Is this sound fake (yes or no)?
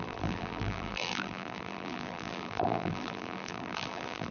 yes